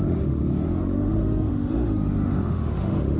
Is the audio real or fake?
fake